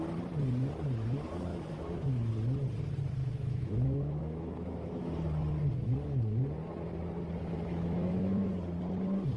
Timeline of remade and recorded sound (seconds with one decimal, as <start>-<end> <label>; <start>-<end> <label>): 0.0-1.5 recorded; 1.5-2.3 remade; 2.3-3.2 recorded; 3.2-5.1 remade; 5.1-7.7 recorded; 7.7-8.5 remade; 8.5-9.4 recorded